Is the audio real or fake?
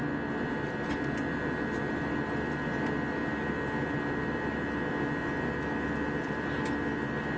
real